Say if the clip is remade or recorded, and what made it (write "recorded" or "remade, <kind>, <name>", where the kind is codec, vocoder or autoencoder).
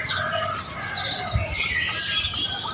recorded